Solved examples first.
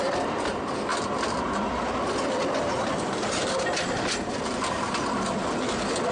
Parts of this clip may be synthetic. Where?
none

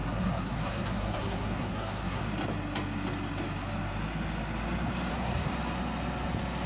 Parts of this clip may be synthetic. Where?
0.0-2.2 (codec, SNAC); 5.1-5.5

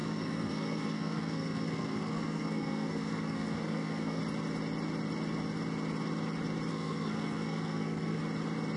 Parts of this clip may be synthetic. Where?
0.0-4.2 (codec, SNAC); 6.7-8.2

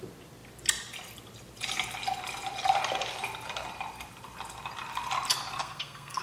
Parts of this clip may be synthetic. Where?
5.6-6.2 (codec, SNAC)

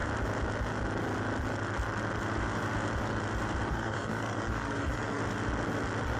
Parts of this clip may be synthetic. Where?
3.7-5.2 (codec, SNAC)